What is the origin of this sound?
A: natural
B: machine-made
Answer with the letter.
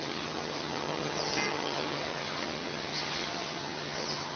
B